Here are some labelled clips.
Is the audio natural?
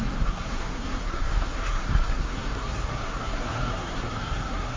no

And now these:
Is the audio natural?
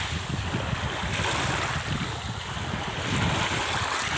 yes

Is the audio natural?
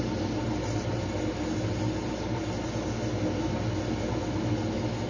yes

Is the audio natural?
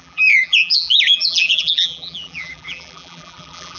no